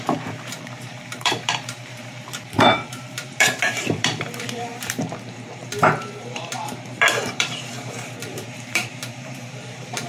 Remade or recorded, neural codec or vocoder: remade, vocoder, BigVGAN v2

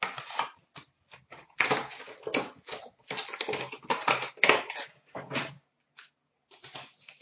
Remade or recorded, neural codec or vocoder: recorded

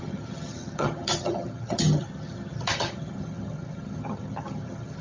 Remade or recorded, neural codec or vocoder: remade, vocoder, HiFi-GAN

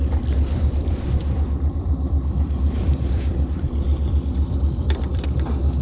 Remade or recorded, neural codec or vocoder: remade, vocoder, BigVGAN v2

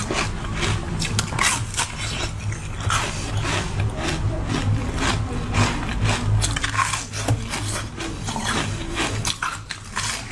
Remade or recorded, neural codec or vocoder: recorded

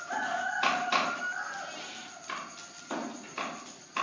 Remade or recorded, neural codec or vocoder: recorded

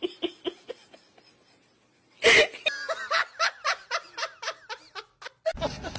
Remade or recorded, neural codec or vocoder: recorded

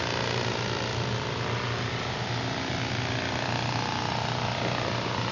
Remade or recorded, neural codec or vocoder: recorded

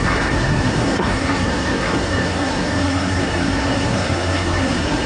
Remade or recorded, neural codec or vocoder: remade, codec, SNAC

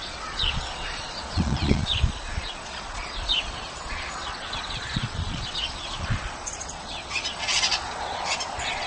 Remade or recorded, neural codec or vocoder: remade, vocoder, Vocos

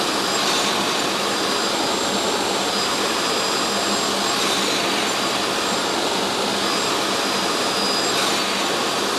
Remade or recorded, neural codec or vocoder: recorded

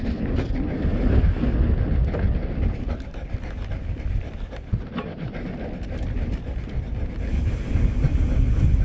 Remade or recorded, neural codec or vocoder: recorded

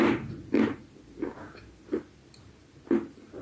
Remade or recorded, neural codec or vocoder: recorded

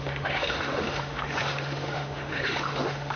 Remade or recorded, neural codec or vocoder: remade, autoencoder, DAC-VAE